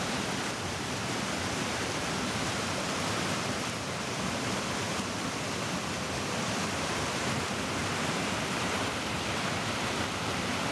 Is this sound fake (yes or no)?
yes